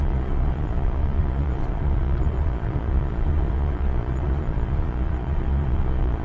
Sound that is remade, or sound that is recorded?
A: remade